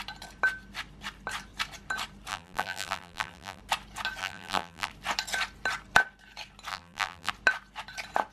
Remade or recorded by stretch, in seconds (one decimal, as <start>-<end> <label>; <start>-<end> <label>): 0.0-2.3 recorded; 2.3-3.6 remade; 3.6-4.2 recorded; 4.2-4.9 remade; 4.9-6.7 recorded; 6.7-7.3 remade; 7.3-8.3 recorded